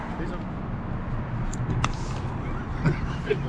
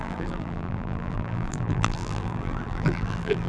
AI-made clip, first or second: second